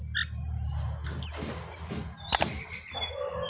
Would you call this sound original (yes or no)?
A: yes